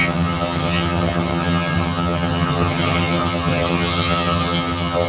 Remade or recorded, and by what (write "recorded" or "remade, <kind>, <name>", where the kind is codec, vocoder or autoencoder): remade, vocoder, HiFi-GAN